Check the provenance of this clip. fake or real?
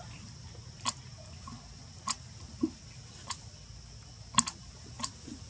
real